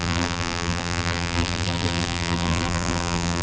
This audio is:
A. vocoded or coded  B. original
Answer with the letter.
A